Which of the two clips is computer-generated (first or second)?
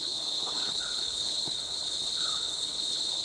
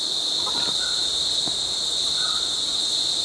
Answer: first